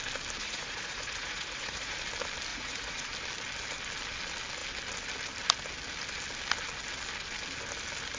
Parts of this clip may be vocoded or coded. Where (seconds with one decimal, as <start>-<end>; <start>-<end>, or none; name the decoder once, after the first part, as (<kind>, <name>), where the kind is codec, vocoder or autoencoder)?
0.4-1.9 (vocoder, Vocos); 2.5-3.1

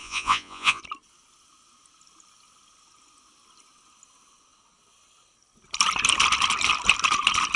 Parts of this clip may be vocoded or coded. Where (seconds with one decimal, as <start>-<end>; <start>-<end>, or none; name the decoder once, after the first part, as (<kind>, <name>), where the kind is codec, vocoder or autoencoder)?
0.0-0.8 (vocoder, Vocos)